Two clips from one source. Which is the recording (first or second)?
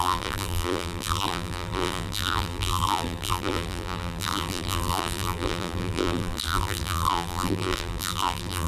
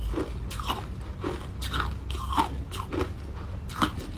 second